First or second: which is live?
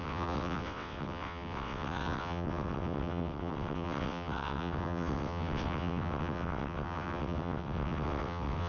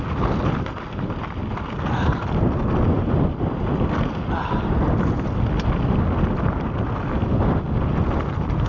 second